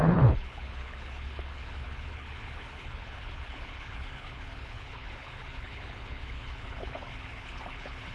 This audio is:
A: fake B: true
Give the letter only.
A